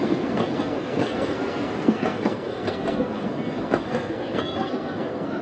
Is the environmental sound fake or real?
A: fake